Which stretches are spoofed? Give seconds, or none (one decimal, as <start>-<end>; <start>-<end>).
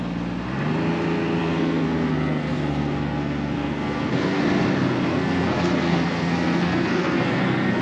1.4-4.4; 5.1-7.8